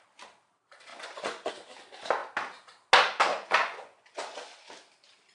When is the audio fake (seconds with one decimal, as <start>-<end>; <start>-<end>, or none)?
0.9-1.5; 3.3-4.7